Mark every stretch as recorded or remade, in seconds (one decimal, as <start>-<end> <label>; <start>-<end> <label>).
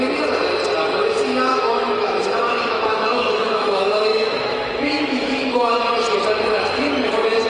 0.0-1.5 recorded; 1.5-5.9 remade; 5.9-7.5 recorded